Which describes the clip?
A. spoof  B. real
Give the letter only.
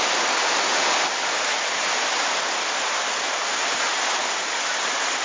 B